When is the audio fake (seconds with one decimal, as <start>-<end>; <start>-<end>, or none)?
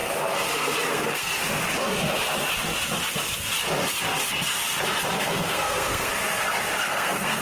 0.9-1.4; 5.2-6.1; 6.8-7.4